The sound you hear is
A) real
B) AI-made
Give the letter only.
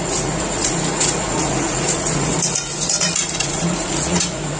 B